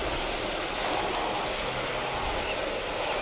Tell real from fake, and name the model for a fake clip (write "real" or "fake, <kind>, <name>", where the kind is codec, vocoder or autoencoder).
real